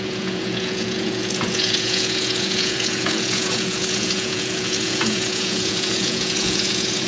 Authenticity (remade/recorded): remade